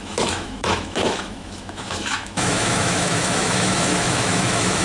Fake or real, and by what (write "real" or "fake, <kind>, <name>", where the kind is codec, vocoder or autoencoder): fake, autoencoder, DAC-VAE